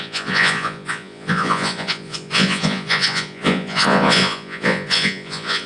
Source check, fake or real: fake